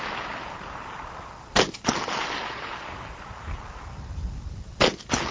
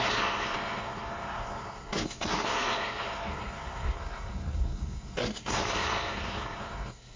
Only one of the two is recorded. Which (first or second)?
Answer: first